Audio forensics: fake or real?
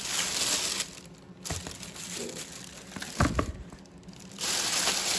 real